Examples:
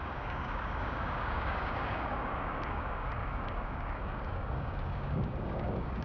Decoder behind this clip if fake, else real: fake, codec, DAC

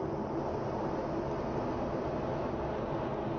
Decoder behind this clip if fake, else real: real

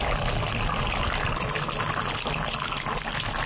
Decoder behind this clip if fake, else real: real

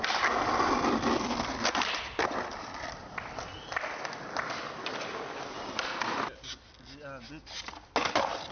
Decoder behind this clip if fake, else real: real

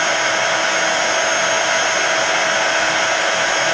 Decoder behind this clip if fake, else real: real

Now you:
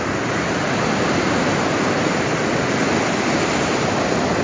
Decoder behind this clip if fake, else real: real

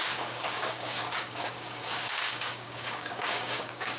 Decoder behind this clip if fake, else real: fake, codec, DAC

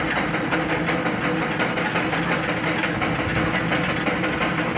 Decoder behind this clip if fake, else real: real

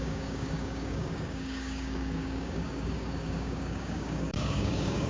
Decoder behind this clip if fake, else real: fake, codec, DAC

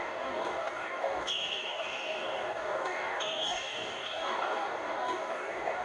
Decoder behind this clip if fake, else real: fake, codec, DAC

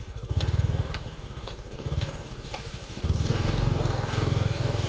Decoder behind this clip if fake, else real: fake, codec, DAC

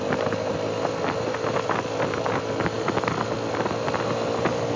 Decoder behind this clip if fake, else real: real